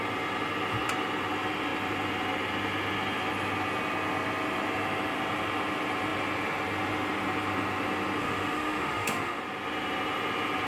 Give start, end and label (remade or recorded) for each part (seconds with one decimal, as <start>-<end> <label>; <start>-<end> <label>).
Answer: 0.0-8.2 recorded; 8.2-9.4 remade; 9.4-10.7 recorded